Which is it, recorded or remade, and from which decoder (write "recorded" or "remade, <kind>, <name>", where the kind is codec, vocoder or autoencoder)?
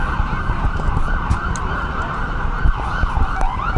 recorded